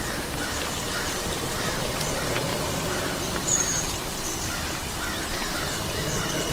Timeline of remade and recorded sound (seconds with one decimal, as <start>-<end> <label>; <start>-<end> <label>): 0.0-6.5 remade

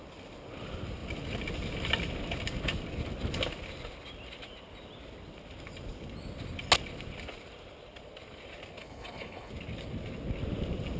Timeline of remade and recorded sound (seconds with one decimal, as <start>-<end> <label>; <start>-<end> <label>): 0.0-8.8 recorded; 8.8-9.5 remade; 9.5-11.0 recorded

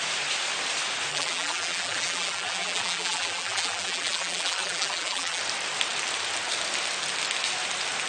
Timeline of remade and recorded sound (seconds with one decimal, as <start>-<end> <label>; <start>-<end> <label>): 0.0-1.1 recorded; 1.1-5.4 remade; 5.4-8.1 recorded